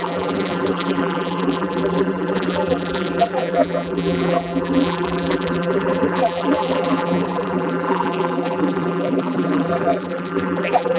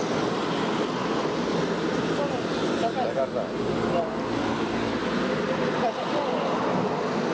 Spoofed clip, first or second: first